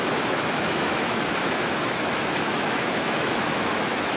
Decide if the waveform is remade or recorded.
remade